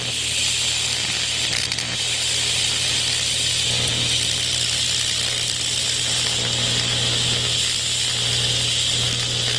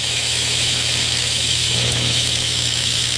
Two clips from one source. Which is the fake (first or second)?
second